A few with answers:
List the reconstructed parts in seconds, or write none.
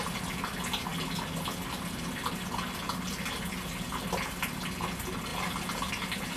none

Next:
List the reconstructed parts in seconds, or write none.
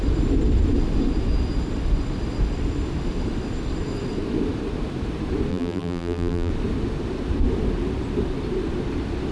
5.5-6.5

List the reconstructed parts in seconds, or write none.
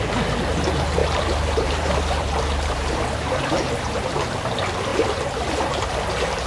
1.0-4.3; 4.9-5.9